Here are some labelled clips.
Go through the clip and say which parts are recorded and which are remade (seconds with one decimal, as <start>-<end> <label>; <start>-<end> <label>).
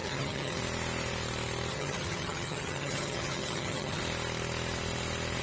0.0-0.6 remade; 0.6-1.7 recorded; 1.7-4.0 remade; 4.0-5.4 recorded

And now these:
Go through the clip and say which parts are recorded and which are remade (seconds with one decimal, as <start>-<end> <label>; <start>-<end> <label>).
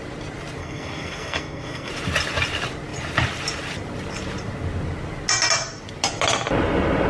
0.0-0.6 recorded; 0.6-1.9 remade; 1.9-7.1 recorded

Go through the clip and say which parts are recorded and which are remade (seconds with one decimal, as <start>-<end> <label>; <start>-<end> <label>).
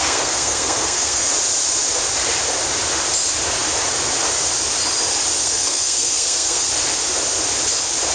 0.0-1.3 remade; 1.3-5.4 recorded; 5.4-6.7 remade; 6.7-8.1 recorded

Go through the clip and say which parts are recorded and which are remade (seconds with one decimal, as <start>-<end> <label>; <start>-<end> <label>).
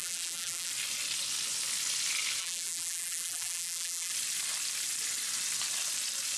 0.0-0.7 remade; 0.7-2.4 recorded; 2.4-4.1 remade; 4.1-6.4 recorded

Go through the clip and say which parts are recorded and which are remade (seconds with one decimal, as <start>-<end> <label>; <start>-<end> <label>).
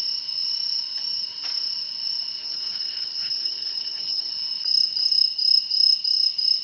0.0-2.4 recorded; 2.4-4.3 remade; 4.3-6.6 recorded